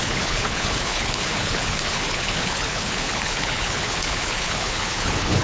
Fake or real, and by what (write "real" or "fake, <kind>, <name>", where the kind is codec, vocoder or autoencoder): fake, codec, HILCodec